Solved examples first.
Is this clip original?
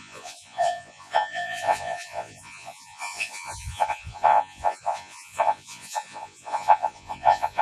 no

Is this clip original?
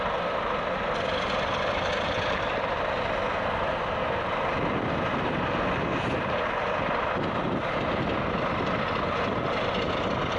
yes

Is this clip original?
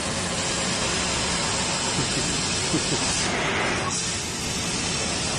yes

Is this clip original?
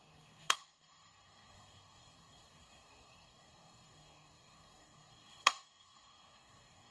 no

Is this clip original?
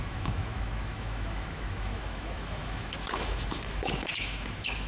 no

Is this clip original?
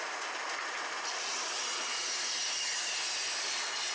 yes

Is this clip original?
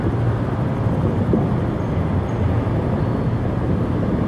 yes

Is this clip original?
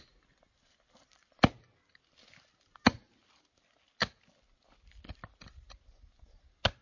yes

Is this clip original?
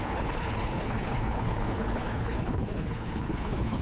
no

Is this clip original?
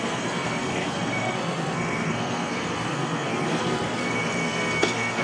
no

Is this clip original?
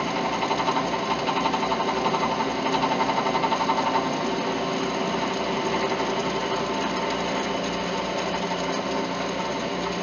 yes